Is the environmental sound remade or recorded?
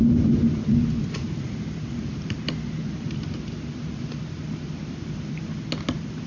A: recorded